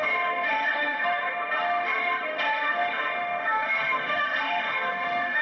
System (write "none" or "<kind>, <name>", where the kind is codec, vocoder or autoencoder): autoencoder, DAC-VAE